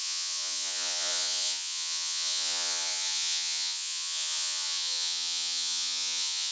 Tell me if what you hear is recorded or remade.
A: remade